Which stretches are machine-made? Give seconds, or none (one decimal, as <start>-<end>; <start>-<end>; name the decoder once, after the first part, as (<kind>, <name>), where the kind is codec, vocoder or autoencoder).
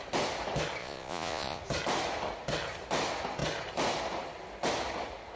0.8-1.6 (vocoder, Vocos)